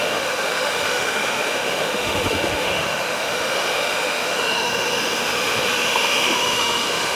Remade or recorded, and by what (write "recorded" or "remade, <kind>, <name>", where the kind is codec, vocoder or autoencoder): remade, autoencoder, DAC-VAE